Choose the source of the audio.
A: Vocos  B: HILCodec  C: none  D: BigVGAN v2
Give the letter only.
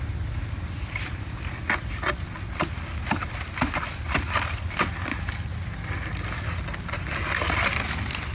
C